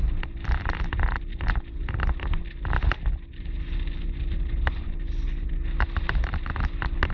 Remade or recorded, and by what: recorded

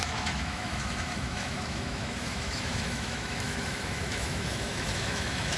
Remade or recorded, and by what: remade, autoencoder, DAC-VAE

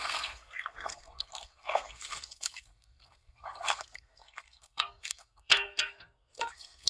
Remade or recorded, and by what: remade, codec, SNAC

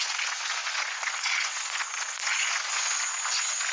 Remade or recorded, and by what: remade, vocoder, Vocos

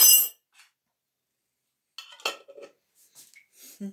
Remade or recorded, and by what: recorded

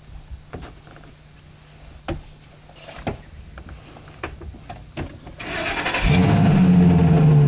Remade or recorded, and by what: recorded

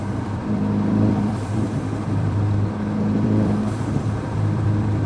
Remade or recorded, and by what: remade, vocoder, BigVGAN v2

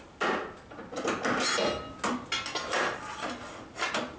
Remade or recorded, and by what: recorded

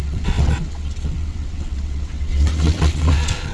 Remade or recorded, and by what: remade, vocoder, WaveNeXt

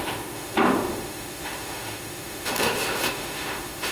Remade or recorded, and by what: remade, autoencoder, DAC-VAE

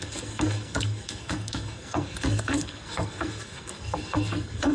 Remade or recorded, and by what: remade, codec, SNAC